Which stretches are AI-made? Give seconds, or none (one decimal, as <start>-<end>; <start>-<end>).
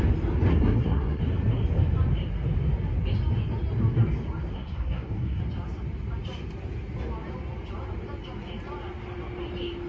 0.5-1.2; 4.5-5.4